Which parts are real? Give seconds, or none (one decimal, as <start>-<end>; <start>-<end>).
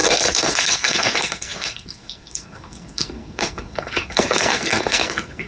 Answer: none